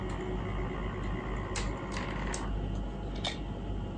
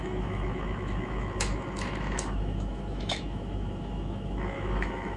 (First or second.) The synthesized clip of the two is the second